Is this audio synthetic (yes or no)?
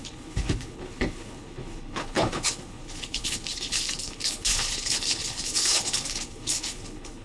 yes